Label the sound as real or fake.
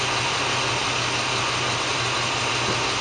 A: real